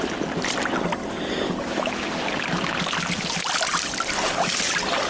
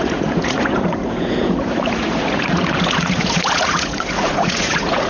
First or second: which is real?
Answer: first